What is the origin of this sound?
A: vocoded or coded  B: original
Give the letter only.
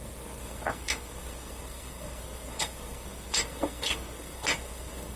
A